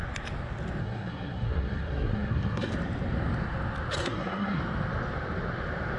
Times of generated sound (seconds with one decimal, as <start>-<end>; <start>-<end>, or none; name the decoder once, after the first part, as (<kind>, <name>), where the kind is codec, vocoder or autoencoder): 0.8-2.7 (codec, SNAC); 4.0-4.6